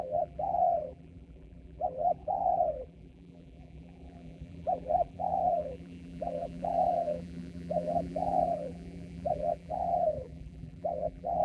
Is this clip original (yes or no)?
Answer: no